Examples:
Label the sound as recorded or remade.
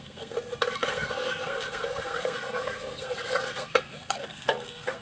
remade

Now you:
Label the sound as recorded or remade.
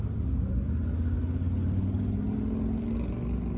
recorded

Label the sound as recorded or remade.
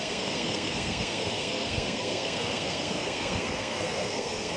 remade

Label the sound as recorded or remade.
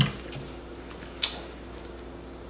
recorded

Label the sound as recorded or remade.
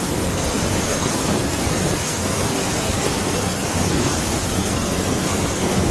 remade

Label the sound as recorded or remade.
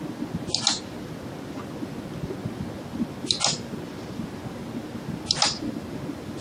recorded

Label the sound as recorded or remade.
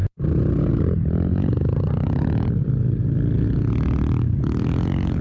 recorded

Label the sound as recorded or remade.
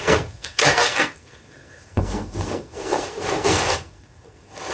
remade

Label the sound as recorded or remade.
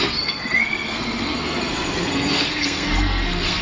remade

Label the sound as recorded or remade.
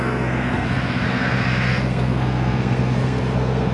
remade